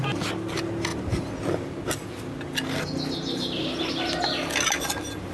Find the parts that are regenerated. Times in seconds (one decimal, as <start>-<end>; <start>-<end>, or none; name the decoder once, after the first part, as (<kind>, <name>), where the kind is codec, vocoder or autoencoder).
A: none